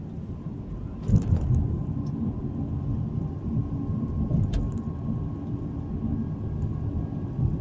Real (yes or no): yes